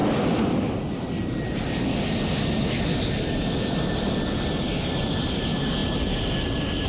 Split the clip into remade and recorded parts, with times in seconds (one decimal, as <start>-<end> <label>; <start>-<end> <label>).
0.0-6.9 recorded